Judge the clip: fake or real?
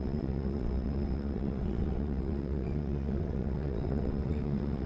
fake